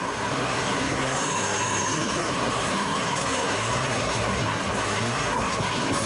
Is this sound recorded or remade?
remade